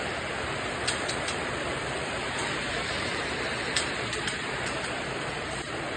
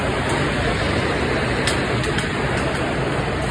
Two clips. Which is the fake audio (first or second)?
first